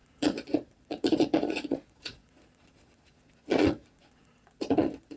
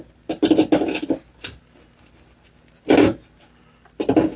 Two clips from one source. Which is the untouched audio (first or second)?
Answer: second